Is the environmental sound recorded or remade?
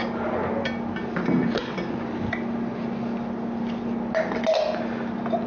recorded